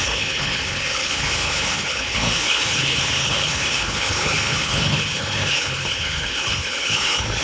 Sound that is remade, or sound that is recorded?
remade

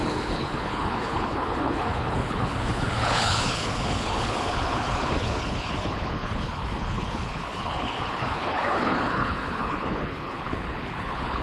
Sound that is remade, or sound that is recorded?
remade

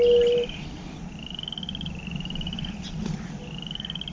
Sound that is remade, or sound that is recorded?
recorded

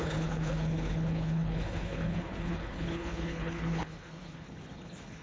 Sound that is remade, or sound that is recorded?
remade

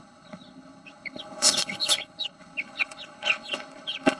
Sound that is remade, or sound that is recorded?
remade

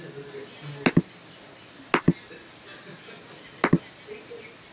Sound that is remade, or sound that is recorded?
recorded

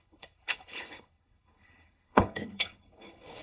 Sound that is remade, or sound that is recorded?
remade